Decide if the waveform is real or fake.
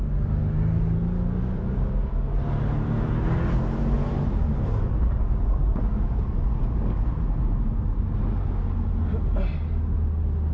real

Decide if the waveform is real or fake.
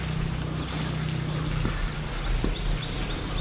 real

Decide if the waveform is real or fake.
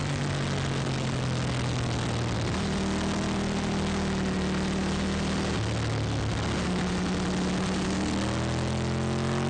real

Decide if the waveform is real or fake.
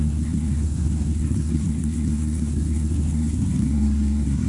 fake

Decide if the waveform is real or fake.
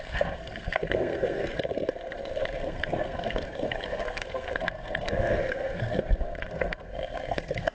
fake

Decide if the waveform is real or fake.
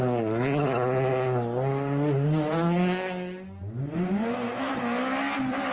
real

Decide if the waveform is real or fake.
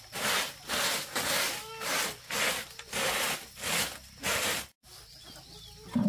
real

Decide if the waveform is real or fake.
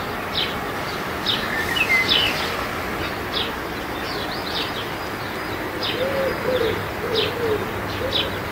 real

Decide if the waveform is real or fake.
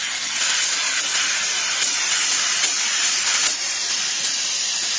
real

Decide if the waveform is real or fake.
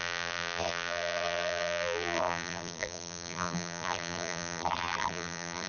fake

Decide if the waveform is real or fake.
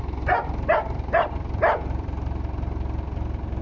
fake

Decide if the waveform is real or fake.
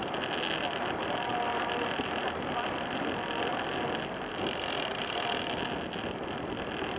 real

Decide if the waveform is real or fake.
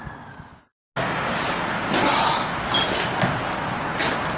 real